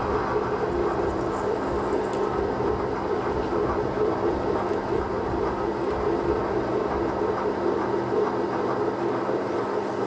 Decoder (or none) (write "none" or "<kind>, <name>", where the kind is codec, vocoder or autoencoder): none